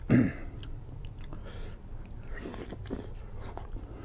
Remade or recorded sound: recorded